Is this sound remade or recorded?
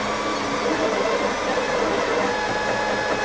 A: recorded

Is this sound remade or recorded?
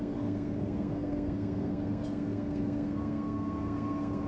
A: remade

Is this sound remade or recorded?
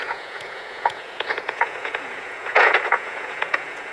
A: remade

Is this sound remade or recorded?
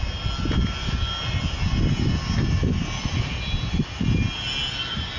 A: recorded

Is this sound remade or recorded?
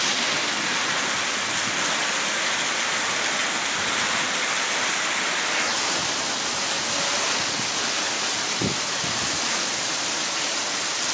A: recorded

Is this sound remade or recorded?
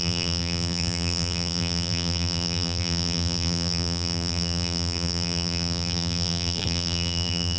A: remade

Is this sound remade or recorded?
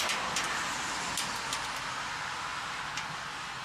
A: recorded